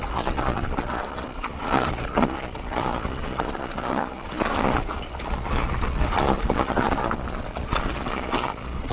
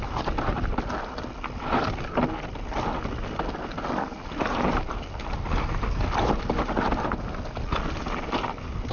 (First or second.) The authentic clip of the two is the second